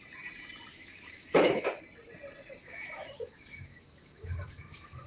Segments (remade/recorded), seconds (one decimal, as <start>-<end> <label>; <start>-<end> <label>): 0.0-0.7 recorded; 0.7-1.6 remade; 1.6-2.6 recorded; 2.6-5.1 remade